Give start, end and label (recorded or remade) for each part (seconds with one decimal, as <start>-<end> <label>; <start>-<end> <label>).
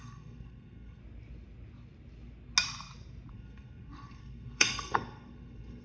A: 0.0-1.0 remade; 1.0-3.3 recorded; 3.3-5.8 remade